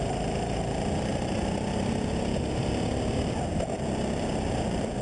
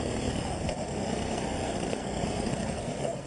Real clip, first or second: first